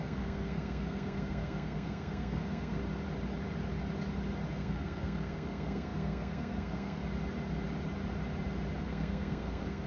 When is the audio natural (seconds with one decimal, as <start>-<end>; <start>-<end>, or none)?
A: 2.8-4.5; 7.0-8.8